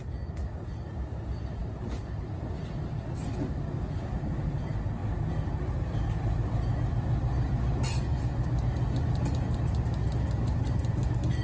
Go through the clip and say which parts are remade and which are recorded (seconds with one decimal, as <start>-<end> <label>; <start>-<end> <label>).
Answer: 0.0-11.4 recorded